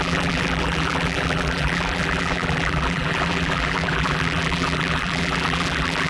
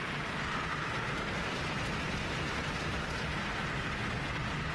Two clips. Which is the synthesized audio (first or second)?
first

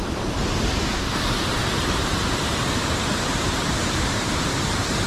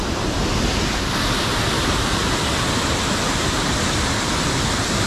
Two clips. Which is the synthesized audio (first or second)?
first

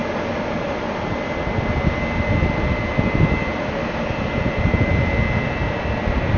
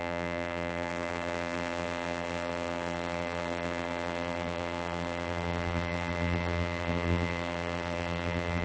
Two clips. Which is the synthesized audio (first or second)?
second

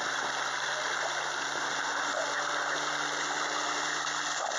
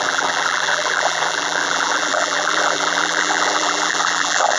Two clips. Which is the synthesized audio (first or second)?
second